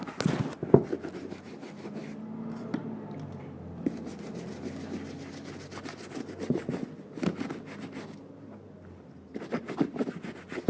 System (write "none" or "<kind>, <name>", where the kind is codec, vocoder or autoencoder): none